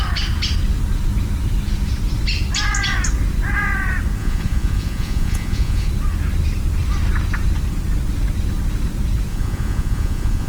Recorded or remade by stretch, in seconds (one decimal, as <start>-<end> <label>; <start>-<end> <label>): 0.0-4.2 recorded; 4.2-5.9 remade; 5.9-9.3 recorded; 9.3-10.5 remade